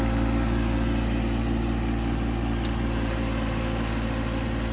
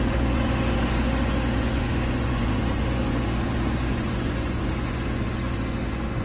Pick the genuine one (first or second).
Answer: first